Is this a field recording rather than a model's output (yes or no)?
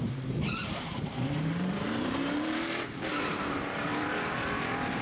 no